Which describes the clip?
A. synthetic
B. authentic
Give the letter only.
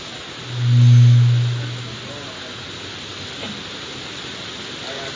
B